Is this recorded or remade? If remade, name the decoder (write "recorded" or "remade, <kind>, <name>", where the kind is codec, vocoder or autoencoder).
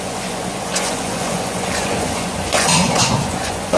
remade, vocoder, Vocos